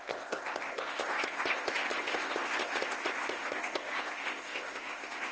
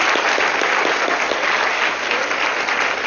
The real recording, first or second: second